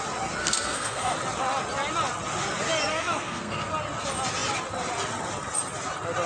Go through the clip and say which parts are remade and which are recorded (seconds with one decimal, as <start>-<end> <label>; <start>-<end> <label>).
0.0-0.4 recorded; 0.4-1.1 remade; 1.1-2.9 recorded; 2.9-3.7 remade; 3.7-6.3 recorded